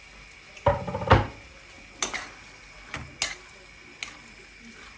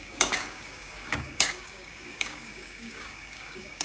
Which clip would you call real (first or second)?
first